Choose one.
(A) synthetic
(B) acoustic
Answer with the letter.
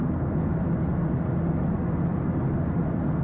B